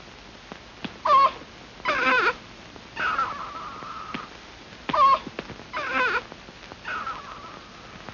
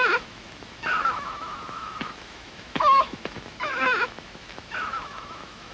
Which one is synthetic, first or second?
second